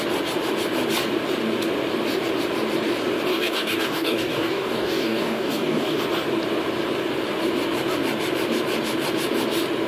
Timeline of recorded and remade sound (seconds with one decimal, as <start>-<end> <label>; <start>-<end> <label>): 0.0-3.3 recorded; 3.3-6.0 remade; 6.0-9.9 recorded